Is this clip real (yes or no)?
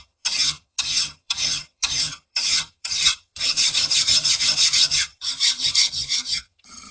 no